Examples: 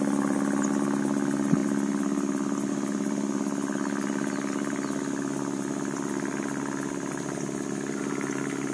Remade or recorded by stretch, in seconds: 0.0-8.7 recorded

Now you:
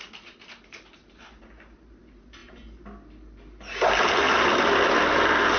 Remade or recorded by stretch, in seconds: 0.0-5.6 recorded

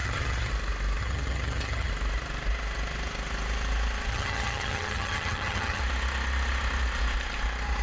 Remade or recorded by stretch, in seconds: 0.0-0.5 remade; 0.5-1.0 recorded; 1.0-1.9 remade; 1.9-4.1 recorded; 4.1-5.8 remade; 5.8-7.8 recorded

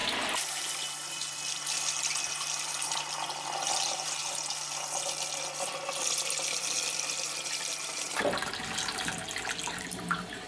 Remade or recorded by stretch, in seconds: 0.0-2.3 recorded; 2.3-4.2 remade; 4.2-8.1 recorded; 8.1-9.1 remade; 9.1-9.7 recorded; 9.7-10.5 remade

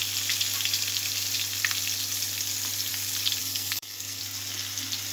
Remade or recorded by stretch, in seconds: 0.0-3.4 recorded; 3.4-4.2 remade; 4.2-5.1 recorded

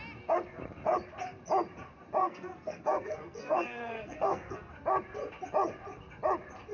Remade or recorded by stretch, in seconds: 0.0-2.2 recorded; 2.2-4.7 remade; 4.7-6.7 recorded

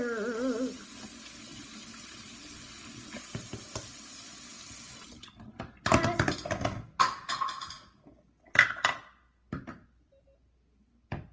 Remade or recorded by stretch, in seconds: 0.0-11.3 recorded

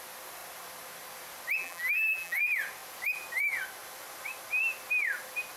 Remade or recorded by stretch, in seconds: 0.0-1.6 recorded; 1.6-2.4 remade; 2.4-5.6 recorded